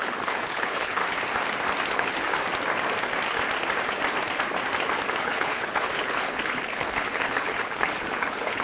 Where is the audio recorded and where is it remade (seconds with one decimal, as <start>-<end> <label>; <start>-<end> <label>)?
0.0-1.0 remade; 1.0-1.9 recorded; 1.9-2.4 remade; 2.4-5.2 recorded; 5.2-8.6 remade